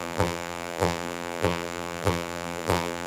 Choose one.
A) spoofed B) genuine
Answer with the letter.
A